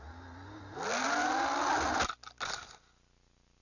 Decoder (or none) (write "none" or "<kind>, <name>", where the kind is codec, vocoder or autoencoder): none